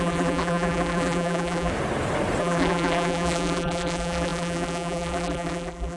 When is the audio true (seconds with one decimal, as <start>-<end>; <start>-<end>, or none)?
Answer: 1.7-2.4